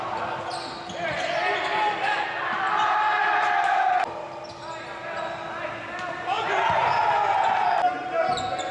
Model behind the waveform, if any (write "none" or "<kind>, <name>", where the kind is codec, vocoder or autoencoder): none